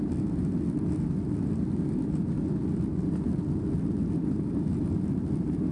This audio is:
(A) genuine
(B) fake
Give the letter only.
A